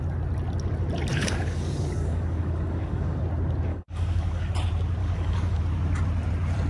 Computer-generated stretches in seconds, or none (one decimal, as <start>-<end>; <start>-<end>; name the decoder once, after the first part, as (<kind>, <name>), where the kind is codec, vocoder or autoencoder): 1.1-3.2 (codec, DAC); 3.7-4.5; 5.0-5.6